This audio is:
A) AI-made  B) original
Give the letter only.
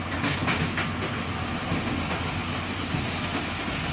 B